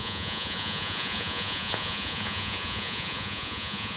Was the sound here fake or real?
fake